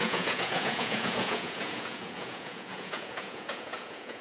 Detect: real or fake fake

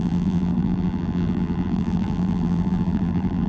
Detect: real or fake fake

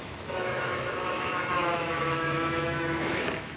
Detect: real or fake fake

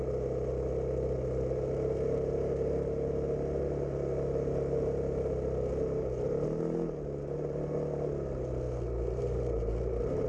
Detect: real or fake real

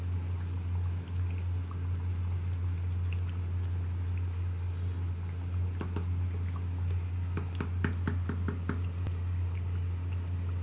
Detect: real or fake real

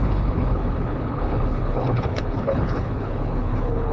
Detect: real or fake fake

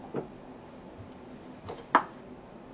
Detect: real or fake real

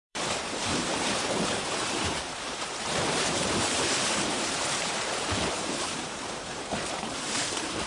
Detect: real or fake fake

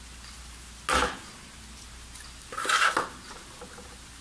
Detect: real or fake real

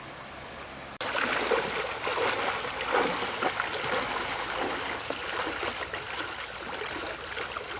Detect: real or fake real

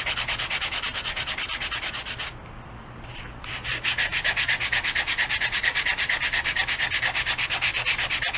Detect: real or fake real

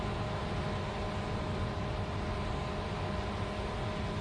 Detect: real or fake real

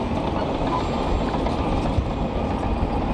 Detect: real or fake real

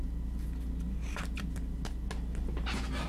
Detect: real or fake real